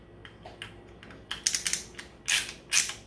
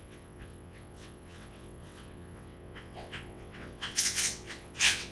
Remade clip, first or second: second